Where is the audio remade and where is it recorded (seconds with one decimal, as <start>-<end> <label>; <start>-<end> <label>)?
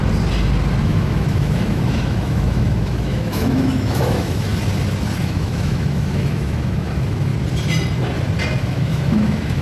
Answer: 0.0-0.8 recorded; 0.8-4.5 remade; 4.5-5.2 recorded; 5.2-7.3 remade; 7.3-8.6 recorded; 8.6-9.6 remade